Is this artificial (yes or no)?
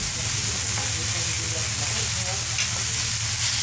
no